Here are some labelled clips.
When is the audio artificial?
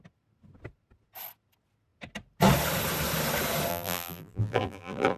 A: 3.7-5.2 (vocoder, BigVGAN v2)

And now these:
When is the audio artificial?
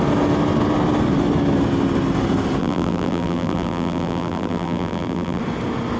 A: 2.6-5.4 (vocoder, BigVGAN v2)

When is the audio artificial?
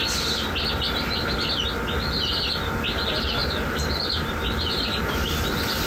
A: 3.4-5.0 (vocoder, BigVGAN v2)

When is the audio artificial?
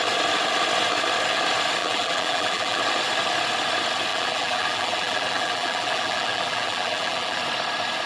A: 1.8-2.8 (vocoder, BigVGAN v2); 4.1-7.4